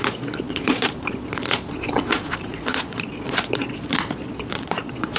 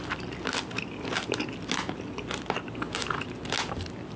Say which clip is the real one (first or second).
second